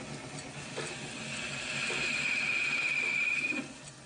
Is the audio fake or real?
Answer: real